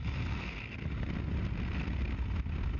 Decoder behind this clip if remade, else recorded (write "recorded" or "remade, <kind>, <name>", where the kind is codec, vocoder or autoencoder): recorded